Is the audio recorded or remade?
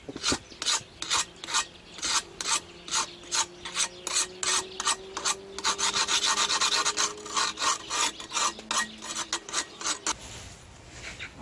recorded